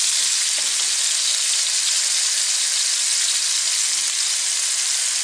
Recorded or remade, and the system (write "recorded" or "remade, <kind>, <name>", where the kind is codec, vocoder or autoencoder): recorded